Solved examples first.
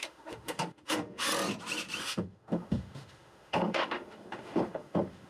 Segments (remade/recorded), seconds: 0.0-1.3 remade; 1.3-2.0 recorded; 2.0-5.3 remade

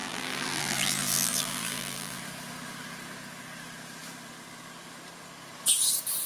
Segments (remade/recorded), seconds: 0.0-2.2 remade; 2.2-6.3 recorded

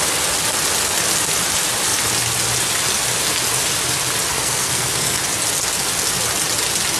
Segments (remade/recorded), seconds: 0.0-4.3 recorded; 4.3-5.2 remade; 5.2-7.0 recorded

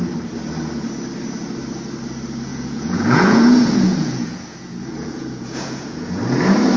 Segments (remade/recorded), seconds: 0.0-2.5 recorded; 2.5-6.2 remade; 6.2-6.8 recorded

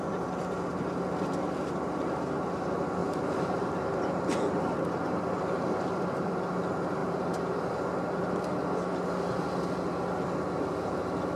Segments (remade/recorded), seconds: 0.0-3.0 recorded; 3.0-5.4 remade; 5.4-7.0 recorded; 7.0-7.6 remade; 7.6-11.4 recorded

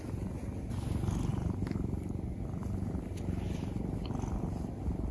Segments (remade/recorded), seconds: 0.0-5.1 recorded

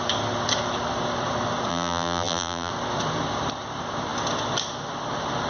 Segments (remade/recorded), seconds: 0.0-1.7 recorded; 1.7-2.7 remade; 2.7-5.5 recorded

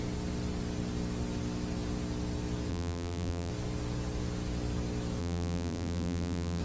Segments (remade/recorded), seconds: 0.0-2.7 recorded; 2.7-3.5 remade; 3.5-5.2 recorded; 5.2-6.6 remade